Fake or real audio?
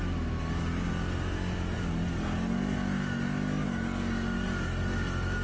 real